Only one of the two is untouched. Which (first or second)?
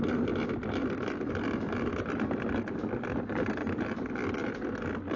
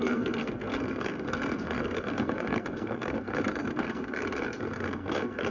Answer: first